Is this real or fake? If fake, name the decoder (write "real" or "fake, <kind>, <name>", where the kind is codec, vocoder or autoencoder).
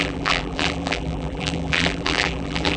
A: fake, vocoder, BigVGAN v2